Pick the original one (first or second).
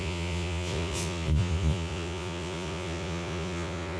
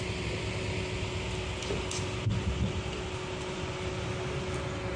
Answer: second